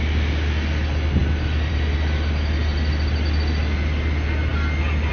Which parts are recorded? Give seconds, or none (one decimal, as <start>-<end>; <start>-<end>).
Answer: 0.0-5.1